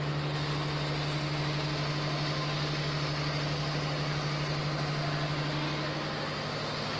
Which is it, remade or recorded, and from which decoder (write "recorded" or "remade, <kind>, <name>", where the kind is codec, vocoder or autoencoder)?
recorded